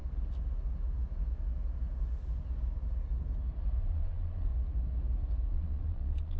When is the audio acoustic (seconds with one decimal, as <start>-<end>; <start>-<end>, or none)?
0.0-3.8; 4.5-5.5

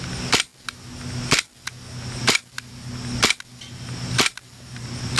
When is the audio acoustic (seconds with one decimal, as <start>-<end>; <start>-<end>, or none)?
0.0-5.2